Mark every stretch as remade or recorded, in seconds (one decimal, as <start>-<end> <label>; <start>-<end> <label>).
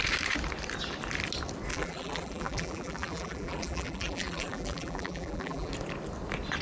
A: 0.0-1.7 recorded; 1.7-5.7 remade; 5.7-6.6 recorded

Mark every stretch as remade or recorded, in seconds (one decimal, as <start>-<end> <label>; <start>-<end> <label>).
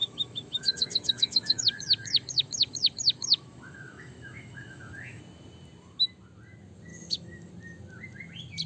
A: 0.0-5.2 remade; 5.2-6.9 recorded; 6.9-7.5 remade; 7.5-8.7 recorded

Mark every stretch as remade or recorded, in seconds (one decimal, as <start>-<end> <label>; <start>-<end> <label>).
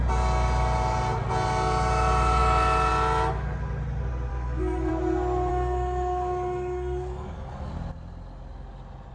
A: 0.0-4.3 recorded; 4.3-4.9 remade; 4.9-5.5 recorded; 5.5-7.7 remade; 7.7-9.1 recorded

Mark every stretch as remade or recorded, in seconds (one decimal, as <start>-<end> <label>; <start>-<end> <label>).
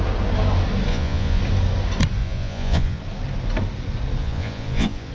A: 0.0-0.9 recorded; 0.9-1.4 remade; 1.4-2.2 recorded; 2.2-3.0 remade; 3.0-4.2 recorded; 4.2-5.1 remade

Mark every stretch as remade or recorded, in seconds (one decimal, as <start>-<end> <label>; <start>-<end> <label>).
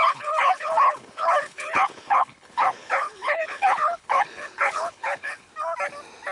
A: 0.0-5.5 remade; 5.5-6.3 recorded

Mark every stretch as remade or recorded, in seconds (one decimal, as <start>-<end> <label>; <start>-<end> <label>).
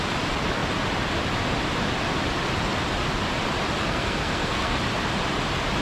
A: 0.0-3.8 recorded; 3.8-4.8 remade; 4.8-5.8 recorded